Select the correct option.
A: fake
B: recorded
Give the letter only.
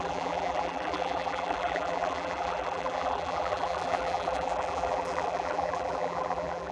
A